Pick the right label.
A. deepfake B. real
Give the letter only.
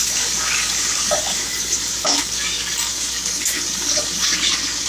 A